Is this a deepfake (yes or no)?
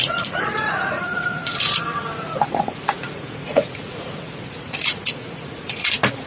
yes